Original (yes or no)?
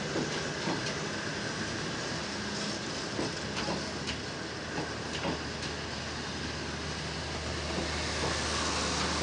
yes